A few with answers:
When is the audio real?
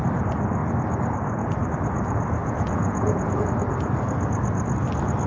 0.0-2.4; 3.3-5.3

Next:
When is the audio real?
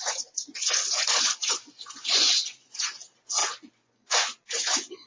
none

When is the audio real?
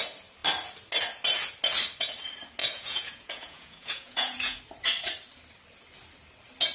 0.0-2.6; 4.6-6.7